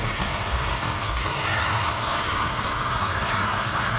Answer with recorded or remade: remade